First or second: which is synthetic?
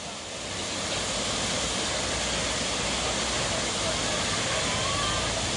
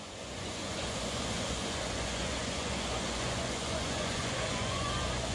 second